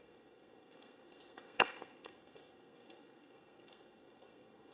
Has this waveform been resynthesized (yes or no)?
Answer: yes